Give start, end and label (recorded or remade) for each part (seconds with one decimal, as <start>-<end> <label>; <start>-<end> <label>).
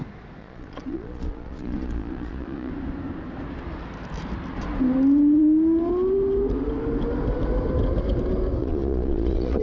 0.0-0.4 recorded; 0.4-2.7 remade; 2.7-8.6 recorded; 8.6-9.6 remade